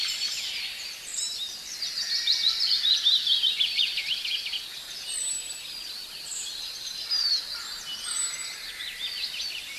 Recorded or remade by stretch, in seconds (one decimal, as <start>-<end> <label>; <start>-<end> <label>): 0.0-9.8 recorded